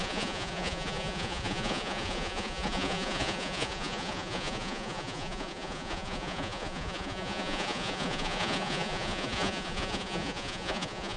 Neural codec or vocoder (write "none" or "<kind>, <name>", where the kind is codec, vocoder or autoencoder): vocoder, Vocos